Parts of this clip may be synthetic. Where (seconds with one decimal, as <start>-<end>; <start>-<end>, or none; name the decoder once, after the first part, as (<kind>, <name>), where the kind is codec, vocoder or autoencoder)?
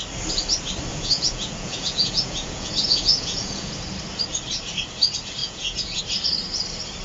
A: 0.9-3.7 (vocoder, Vocos); 5.4-6.0